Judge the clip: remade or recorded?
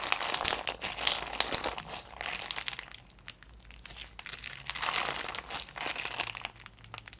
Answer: recorded